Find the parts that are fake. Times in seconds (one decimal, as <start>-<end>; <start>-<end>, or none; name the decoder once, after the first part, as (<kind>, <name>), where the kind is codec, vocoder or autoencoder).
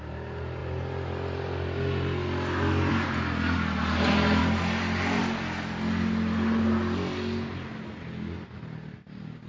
none